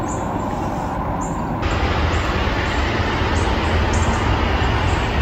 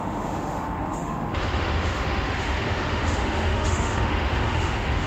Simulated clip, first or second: second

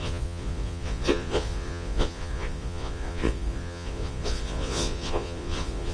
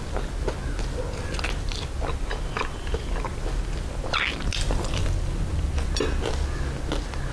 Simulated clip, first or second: first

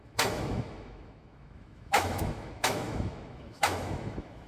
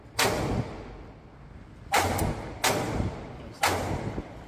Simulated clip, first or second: first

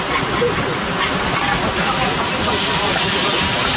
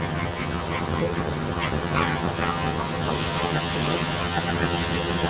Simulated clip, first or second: second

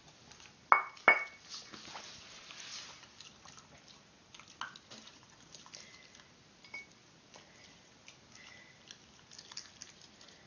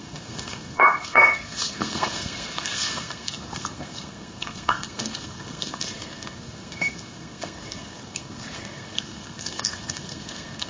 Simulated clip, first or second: second